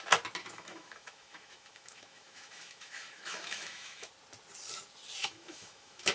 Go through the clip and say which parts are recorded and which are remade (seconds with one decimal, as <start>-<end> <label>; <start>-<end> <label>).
0.0-0.4 recorded; 0.4-4.1 remade; 4.1-5.2 recorded; 5.2-6.1 remade